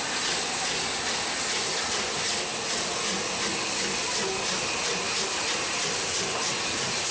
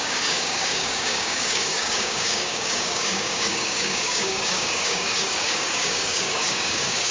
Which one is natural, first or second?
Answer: first